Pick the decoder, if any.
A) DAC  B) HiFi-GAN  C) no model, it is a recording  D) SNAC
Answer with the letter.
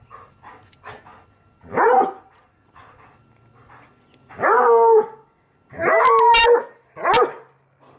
C